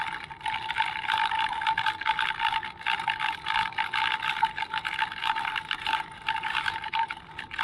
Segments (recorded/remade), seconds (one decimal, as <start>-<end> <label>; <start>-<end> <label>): 0.0-5.2 recorded; 5.2-7.1 remade; 7.1-7.6 recorded